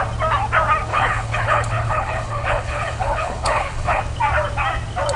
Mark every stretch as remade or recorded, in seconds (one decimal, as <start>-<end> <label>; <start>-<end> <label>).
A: 0.0-0.9 recorded; 0.9-4.0 remade; 4.0-5.2 recorded